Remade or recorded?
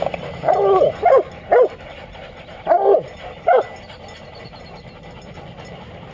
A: recorded